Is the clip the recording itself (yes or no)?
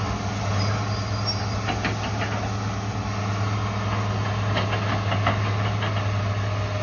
yes